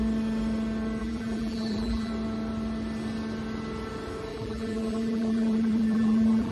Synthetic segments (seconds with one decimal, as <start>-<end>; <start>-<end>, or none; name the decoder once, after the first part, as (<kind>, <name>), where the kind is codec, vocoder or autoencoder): 1.0-2.1 (vocoder, BigVGAN v2); 4.3-6.5